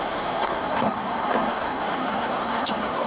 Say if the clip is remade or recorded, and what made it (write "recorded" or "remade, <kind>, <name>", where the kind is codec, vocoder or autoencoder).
remade, codec, SNAC